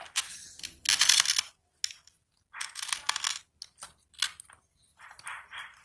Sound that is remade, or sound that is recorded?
recorded